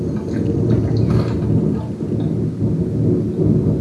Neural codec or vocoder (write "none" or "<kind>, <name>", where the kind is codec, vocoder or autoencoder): none